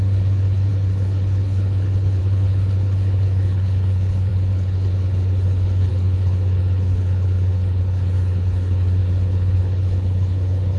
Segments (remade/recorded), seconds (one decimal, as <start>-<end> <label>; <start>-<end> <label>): 0.0-10.8 remade